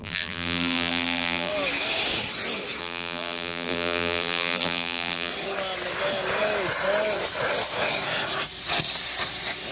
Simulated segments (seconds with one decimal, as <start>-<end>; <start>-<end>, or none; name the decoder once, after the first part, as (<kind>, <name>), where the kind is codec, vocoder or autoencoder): 0.0-1.5 (vocoder, BigVGAN v2); 2.8-5.3